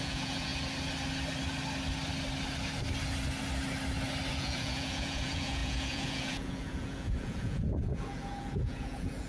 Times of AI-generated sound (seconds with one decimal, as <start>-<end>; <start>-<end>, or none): 0.0-0.5; 4.3-9.3